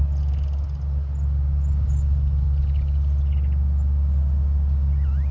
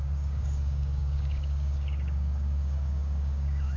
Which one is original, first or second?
first